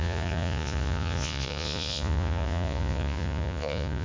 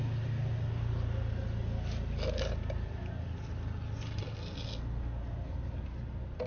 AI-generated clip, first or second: first